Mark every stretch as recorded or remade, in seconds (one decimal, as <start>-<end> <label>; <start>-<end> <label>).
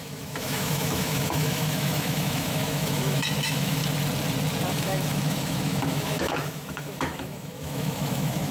0.0-3.8 remade; 3.8-4.7 recorded; 4.7-8.5 remade